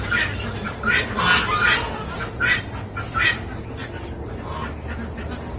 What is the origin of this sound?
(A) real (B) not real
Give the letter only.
A